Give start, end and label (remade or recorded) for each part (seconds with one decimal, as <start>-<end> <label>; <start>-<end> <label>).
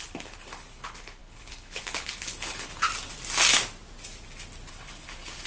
0.0-2.9 remade; 2.9-4.7 recorded; 4.7-5.5 remade